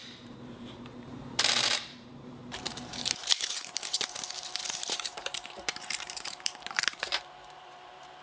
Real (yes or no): no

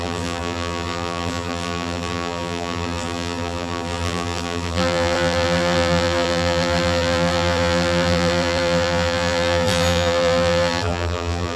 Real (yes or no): no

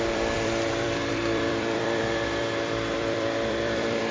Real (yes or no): no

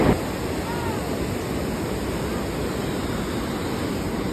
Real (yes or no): yes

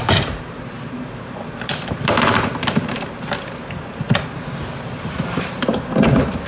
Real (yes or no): no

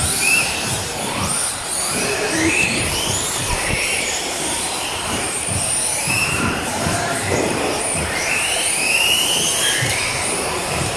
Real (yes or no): no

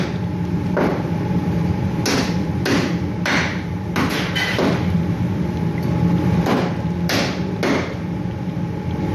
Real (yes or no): yes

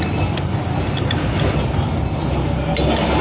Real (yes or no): yes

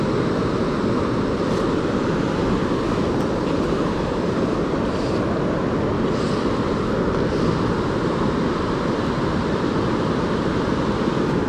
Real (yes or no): yes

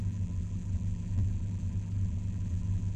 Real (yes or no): no